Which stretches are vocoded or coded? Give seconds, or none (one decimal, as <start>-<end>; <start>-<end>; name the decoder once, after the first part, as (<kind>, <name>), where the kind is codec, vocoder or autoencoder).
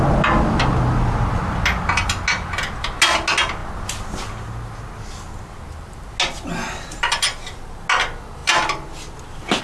none